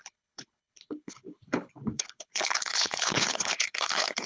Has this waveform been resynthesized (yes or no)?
yes